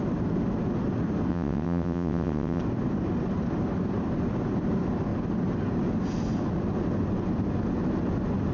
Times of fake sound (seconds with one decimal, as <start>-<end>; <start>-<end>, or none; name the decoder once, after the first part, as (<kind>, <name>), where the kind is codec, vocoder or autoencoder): 1.3-2.6 (vocoder, WaveNeXt)